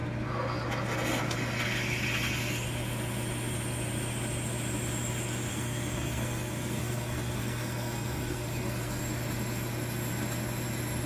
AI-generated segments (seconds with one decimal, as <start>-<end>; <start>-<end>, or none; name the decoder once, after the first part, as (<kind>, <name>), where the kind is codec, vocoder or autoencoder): 5.5-9.0 (codec, SNAC)